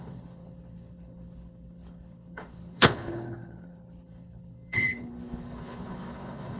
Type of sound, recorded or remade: remade